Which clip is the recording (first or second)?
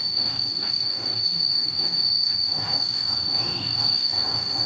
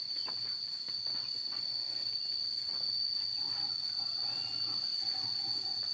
second